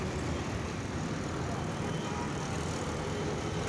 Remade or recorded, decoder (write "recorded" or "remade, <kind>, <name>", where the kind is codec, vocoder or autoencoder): remade, vocoder, BigVGAN v2